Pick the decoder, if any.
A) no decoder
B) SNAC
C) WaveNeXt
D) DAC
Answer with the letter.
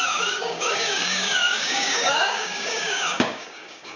D